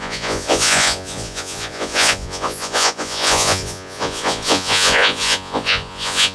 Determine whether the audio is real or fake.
fake